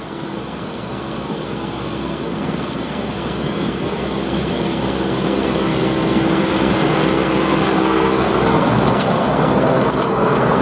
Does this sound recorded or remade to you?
remade